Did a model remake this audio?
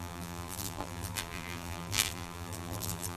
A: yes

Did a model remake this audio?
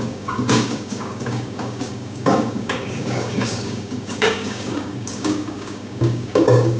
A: yes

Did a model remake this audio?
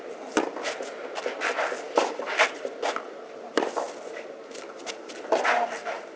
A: no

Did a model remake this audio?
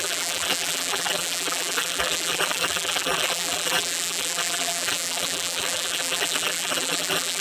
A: yes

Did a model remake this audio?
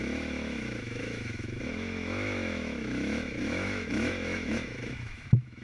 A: yes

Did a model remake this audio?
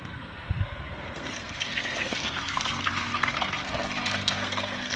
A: yes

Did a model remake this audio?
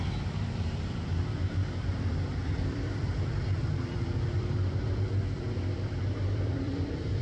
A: yes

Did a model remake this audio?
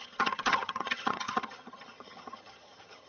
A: yes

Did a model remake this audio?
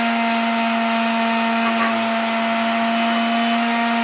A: no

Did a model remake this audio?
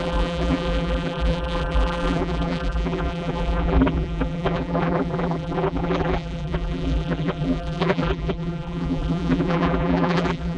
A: yes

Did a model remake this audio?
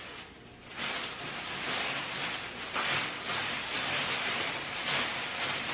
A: no